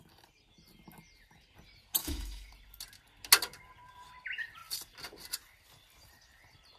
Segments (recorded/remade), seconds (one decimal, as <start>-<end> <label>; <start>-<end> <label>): 0.0-2.0 recorded; 2.0-2.5 remade; 2.5-6.8 recorded